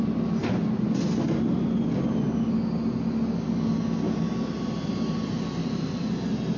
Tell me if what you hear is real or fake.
real